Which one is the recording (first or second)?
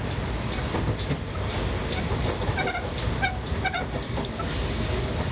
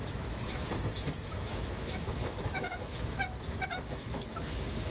first